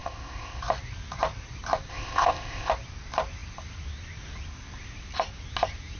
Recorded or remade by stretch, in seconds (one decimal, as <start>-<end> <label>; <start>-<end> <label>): 0.0-0.6 remade; 0.6-1.9 recorded; 1.9-2.7 remade; 2.7-6.0 recorded